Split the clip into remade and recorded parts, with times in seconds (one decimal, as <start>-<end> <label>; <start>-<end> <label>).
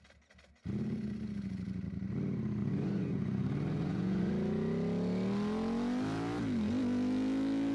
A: 0.0-2.6 recorded; 2.6-4.3 remade; 4.3-7.7 recorded